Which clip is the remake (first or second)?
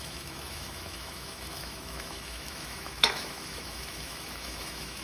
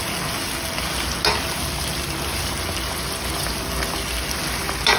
first